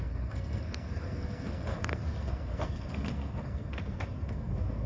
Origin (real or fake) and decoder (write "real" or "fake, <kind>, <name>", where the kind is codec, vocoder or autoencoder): fake, codec, SNAC